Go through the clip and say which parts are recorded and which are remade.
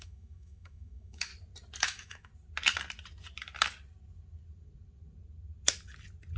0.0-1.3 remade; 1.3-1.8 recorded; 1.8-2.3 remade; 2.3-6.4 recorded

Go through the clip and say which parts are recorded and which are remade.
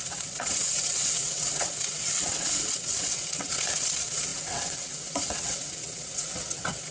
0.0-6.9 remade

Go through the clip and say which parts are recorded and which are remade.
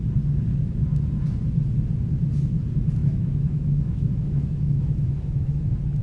0.0-3.0 recorded; 3.0-5.6 remade; 5.6-6.0 recorded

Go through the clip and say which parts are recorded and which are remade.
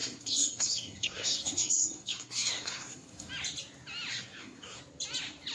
0.0-3.3 remade; 3.3-4.1 recorded; 4.1-4.8 remade; 4.8-5.5 recorded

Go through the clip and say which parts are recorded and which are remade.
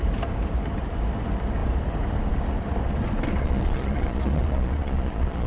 0.0-3.4 recorded; 3.4-5.5 remade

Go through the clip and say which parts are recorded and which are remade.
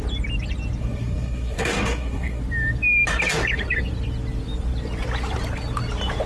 0.0-0.8 recorded; 0.8-2.4 remade; 2.4-6.3 recorded